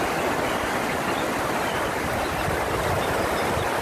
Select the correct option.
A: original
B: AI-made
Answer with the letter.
A